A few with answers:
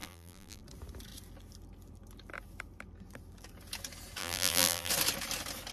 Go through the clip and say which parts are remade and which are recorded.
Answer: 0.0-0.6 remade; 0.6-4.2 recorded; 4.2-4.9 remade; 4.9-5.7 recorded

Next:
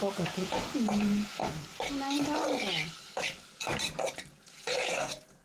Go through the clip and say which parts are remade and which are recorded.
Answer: 0.0-1.4 remade; 1.4-4.3 recorded; 4.3-5.4 remade

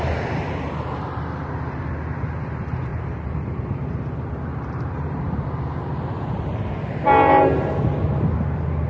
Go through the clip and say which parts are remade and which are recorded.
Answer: 0.0-2.9 recorded; 2.9-5.2 remade; 5.2-5.8 recorded; 5.8-6.8 remade; 6.8-8.9 recorded

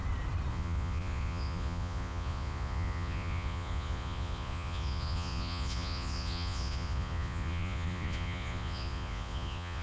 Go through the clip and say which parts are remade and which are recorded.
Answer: 0.0-0.5 recorded; 0.5-9.8 remade

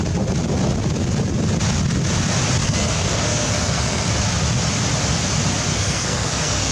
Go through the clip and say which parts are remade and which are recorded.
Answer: 0.0-2.6 recorded; 2.6-4.1 remade; 4.1-5.7 recorded; 5.7-6.7 remade

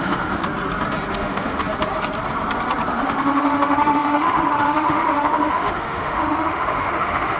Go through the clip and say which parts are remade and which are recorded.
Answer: 0.0-0.4 remade; 0.4-1.1 recorded; 1.1-1.6 remade; 1.6-2.9 recorded; 2.9-7.4 remade

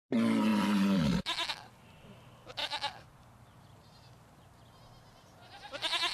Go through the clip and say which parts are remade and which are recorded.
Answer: 0.0-0.5 recorded; 0.5-1.5 remade; 1.5-2.6 recorded; 2.6-4.2 remade; 4.2-6.1 recorded

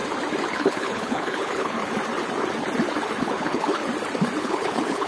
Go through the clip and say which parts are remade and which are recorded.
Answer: 0.0-0.5 recorded; 0.5-1.8 remade; 1.8-3.2 recorded; 3.2-3.8 remade; 3.8-4.4 recorded; 4.4-5.1 remade